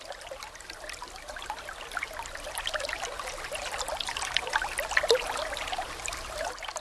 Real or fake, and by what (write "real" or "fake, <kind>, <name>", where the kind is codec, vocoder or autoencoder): real